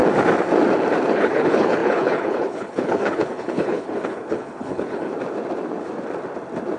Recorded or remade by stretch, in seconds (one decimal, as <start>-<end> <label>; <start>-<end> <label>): 0.0-1.1 recorded; 1.1-5.1 remade; 5.1-6.8 recorded